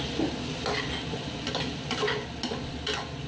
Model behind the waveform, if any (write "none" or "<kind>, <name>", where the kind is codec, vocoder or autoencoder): none